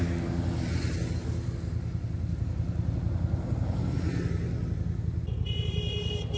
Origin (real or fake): real